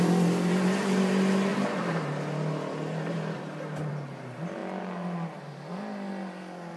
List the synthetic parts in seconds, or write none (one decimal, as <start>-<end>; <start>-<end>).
none